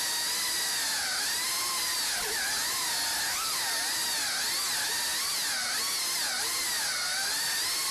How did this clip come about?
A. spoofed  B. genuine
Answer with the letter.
B